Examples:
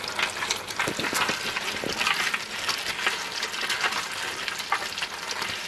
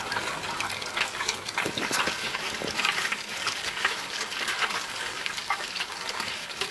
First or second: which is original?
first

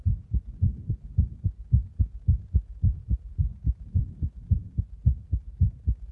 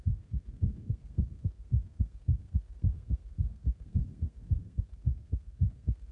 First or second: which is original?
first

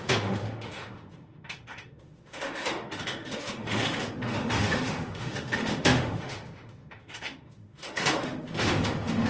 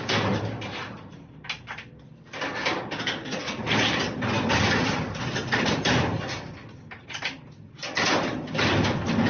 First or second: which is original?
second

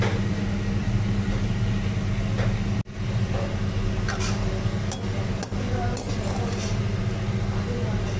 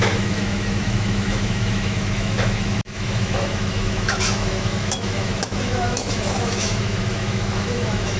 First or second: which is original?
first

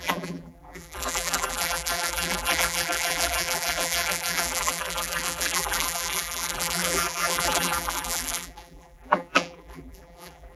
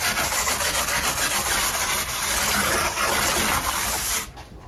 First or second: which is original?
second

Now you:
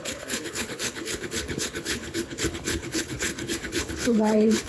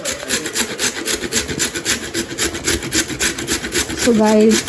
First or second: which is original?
second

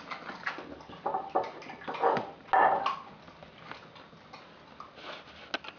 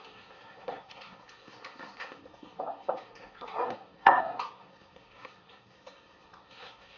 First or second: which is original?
first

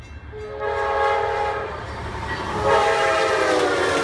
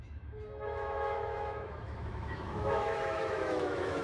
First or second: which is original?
first